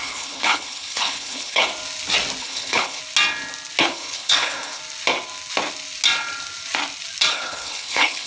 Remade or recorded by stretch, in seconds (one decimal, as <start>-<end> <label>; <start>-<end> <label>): 0.0-1.7 remade; 1.7-2.4 recorded; 2.4-3.0 remade; 3.0-3.8 recorded; 3.8-4.8 remade; 4.8-7.3 recorded; 7.3-8.3 remade